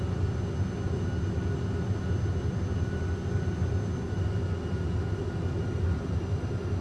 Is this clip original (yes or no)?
yes